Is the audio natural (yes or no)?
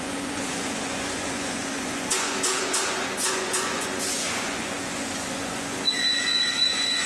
no